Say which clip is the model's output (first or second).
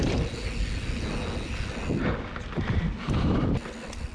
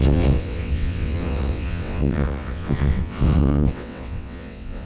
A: second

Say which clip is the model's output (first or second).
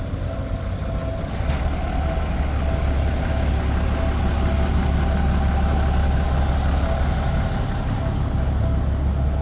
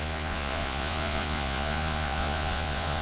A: second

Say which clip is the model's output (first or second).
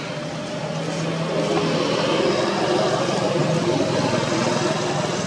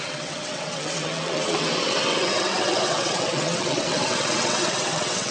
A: second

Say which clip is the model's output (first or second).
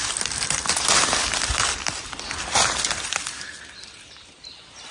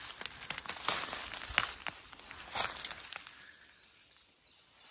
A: first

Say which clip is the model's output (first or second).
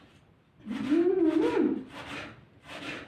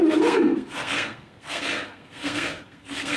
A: second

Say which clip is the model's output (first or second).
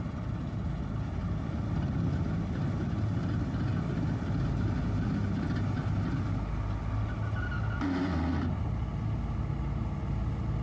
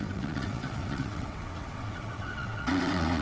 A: second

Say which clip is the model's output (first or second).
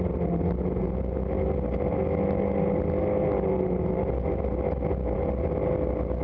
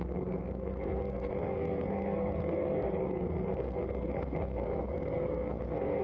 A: second